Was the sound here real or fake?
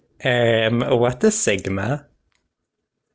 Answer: real